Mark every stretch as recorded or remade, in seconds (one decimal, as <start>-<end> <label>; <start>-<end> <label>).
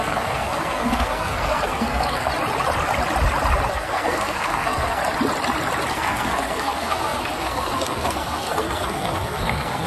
0.0-2.3 remade; 2.3-3.7 recorded; 3.7-5.0 remade; 5.0-5.9 recorded; 5.9-9.9 remade